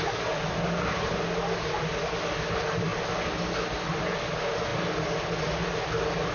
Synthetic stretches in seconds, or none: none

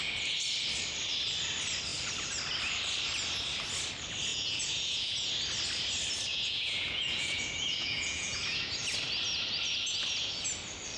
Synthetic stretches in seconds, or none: 4.3-5.3 (vocoder, Vocos); 6.3-8.4

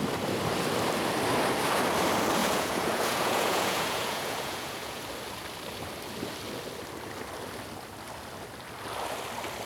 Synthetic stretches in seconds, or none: 2.4-5.0 (vocoder, Vocos)